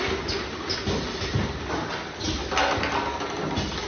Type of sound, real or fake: real